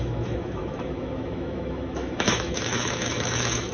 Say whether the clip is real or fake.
fake